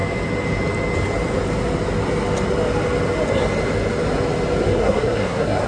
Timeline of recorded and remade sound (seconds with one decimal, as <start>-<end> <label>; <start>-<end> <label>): 0.0-4.7 recorded; 4.7-5.7 remade